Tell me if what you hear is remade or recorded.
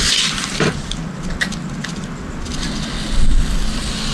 recorded